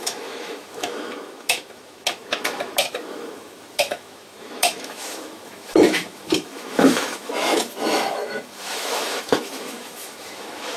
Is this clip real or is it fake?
fake